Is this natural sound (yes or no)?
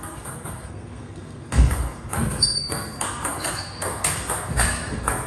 no